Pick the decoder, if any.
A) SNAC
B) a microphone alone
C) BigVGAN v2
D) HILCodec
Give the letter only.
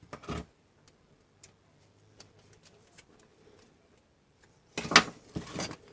B